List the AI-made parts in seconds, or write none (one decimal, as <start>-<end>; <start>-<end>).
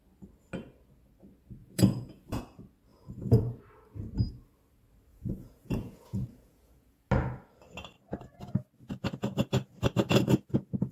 1.6-2.4; 2.9-3.6; 5.1-7.1